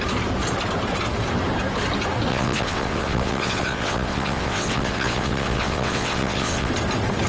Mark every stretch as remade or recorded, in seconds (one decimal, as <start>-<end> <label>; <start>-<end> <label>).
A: 0.0-2.3 recorded; 2.3-6.7 remade; 6.7-7.3 recorded